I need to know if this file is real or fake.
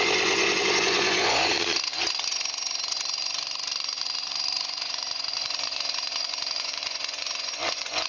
fake